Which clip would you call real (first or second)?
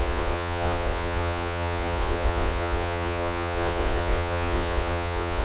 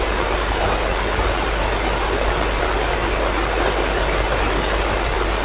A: second